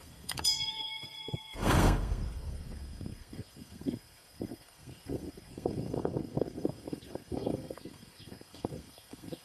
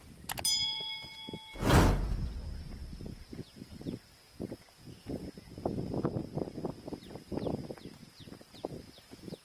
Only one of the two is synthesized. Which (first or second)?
first